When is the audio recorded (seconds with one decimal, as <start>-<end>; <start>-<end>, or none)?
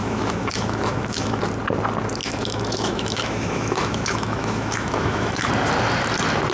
1.4-2.2; 5.5-6.5